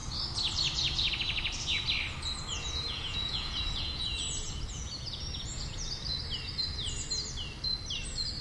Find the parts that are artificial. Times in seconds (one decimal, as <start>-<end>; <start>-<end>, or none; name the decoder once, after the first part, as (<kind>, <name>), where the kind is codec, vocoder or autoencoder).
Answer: 2.5-6.2 (vocoder, Vocos)